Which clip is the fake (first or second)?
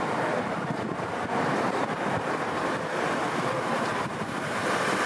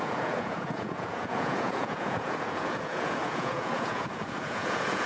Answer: second